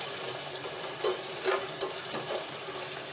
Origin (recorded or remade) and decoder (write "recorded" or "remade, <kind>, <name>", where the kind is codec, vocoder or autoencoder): recorded